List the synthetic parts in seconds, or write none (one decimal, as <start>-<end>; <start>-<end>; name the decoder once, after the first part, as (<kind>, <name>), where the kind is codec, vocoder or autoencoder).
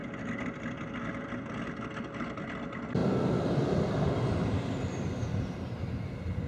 none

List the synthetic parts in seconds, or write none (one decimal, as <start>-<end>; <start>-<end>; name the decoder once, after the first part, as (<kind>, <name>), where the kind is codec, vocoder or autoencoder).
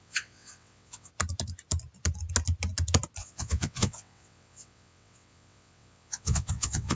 0.0-1.1 (vocoder, WaveNeXt); 3.2-6.9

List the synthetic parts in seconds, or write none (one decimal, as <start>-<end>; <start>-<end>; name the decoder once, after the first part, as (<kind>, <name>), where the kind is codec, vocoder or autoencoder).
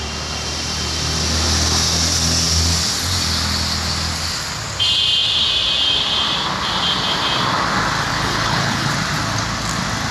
8.1-8.9 (codec, HILCodec)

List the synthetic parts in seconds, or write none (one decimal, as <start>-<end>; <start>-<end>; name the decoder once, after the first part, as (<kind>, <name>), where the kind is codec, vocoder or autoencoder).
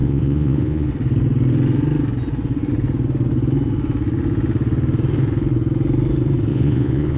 0.0-0.9 (vocoder, Vocos); 6.5-7.2